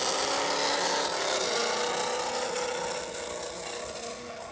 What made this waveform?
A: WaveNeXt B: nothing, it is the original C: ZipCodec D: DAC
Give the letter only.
B